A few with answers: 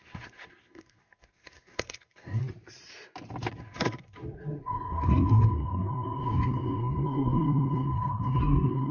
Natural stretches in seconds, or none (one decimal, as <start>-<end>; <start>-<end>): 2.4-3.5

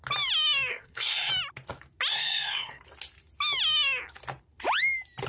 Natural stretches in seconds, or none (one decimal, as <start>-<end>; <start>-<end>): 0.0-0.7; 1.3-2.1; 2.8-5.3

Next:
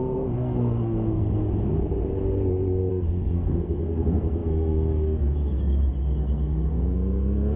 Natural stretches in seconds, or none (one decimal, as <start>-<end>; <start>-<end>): 1.4-2.9

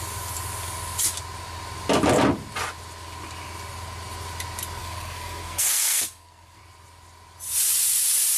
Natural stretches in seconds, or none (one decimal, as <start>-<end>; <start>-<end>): 0.0-4.8; 6.6-8.4

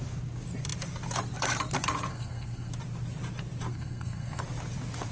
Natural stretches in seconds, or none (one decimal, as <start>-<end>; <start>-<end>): 0.0-2.1; 2.7-3.7; 4.4-5.1